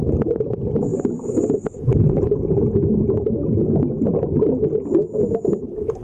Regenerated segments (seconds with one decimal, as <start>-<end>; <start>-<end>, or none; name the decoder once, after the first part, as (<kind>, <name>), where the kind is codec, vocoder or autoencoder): none